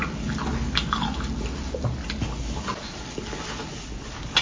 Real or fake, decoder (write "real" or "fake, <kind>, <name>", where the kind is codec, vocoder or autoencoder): real